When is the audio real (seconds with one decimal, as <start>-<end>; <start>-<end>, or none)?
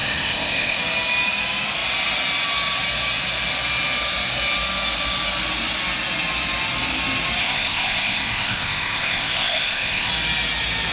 0.8-7.4; 10.1-10.9